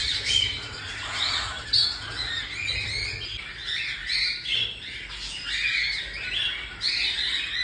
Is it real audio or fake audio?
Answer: real